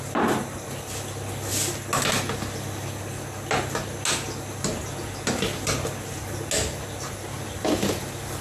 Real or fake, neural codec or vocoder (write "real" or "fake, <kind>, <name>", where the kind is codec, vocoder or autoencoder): real